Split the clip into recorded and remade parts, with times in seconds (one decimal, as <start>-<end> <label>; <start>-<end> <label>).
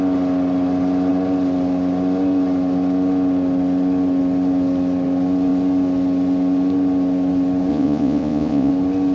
0.0-7.7 recorded; 7.7-8.7 remade; 8.7-9.1 recorded